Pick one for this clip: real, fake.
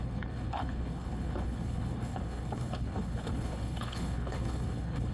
fake